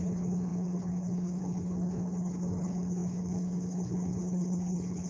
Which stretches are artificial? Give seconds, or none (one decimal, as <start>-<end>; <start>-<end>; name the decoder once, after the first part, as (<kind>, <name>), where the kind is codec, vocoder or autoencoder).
0.0-5.1 (codec, HILCodec)